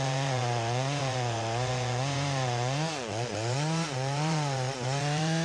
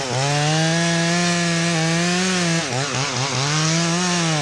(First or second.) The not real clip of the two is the first